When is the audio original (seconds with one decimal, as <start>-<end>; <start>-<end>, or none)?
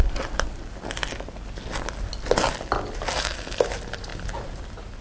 1.0-2.9